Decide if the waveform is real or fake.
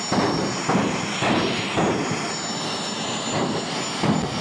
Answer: real